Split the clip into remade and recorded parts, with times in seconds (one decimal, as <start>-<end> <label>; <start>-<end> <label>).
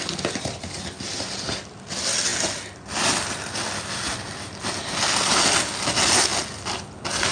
0.0-7.3 recorded